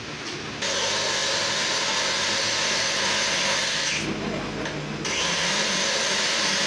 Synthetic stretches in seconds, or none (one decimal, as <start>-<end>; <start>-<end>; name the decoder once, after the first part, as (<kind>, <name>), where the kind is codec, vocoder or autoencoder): none